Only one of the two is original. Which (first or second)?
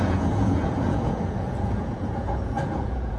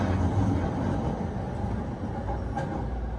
second